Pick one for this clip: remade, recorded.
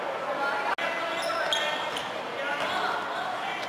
recorded